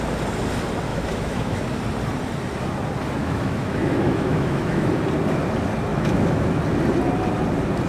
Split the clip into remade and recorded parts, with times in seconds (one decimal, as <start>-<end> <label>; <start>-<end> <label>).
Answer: 0.0-0.9 recorded; 0.9-1.6 remade; 1.6-3.2 recorded; 3.2-4.9 remade; 4.9-5.9 recorded; 5.9-6.6 remade; 6.6-7.9 recorded